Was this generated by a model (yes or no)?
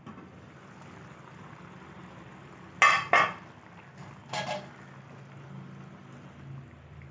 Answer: no